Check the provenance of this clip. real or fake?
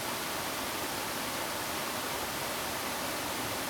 fake